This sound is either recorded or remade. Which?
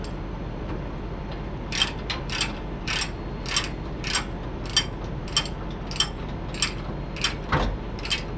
recorded